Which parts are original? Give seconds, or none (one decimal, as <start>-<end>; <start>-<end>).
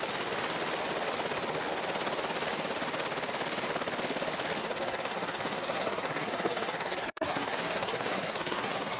0.0-4.6